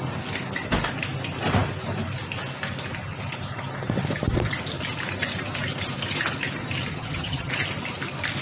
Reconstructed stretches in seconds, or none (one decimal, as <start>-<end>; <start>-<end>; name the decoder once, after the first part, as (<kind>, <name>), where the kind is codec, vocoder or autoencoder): 6.9-7.5 (vocoder, HiFi-GAN)